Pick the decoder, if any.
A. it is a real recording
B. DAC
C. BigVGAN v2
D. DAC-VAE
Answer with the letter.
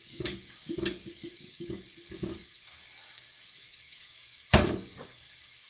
B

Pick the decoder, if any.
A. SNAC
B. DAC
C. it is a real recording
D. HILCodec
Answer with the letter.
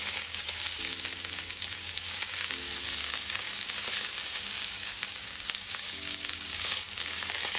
B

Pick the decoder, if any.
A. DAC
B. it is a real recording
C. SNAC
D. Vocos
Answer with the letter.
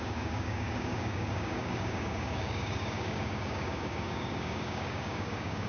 A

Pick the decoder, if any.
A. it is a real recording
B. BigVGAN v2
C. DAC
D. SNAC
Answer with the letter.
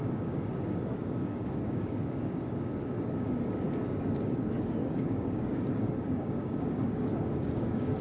C